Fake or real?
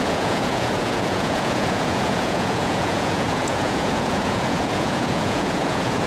fake